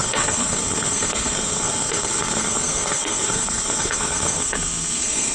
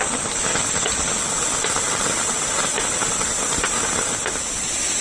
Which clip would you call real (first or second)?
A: second